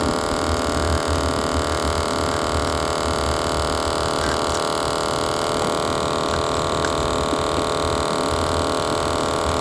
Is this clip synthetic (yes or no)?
no